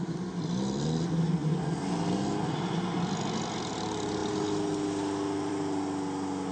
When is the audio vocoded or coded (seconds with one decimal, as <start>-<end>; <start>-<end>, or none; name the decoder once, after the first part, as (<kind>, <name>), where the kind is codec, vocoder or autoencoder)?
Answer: none